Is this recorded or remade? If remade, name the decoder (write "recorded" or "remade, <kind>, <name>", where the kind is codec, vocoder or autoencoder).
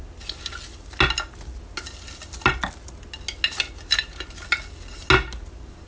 recorded